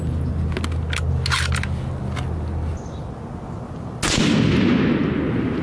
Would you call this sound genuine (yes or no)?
yes